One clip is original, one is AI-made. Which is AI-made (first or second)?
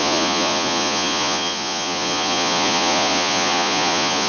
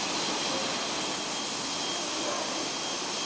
first